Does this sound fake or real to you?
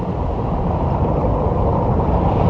real